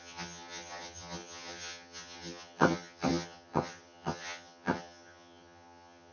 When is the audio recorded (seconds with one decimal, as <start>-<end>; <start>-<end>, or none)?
none